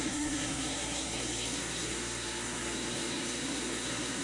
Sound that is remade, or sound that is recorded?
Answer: remade